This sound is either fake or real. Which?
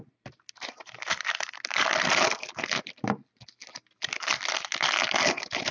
real